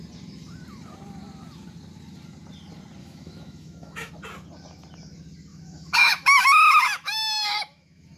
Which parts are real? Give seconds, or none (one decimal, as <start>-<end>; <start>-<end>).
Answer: 0.0-3.0; 4.1-5.5